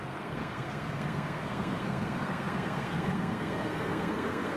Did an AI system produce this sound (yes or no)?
yes